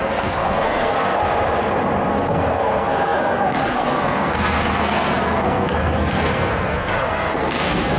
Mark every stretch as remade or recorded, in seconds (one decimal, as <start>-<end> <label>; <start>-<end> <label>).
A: 0.0-1.2 remade; 1.2-2.1 recorded; 2.1-8.0 remade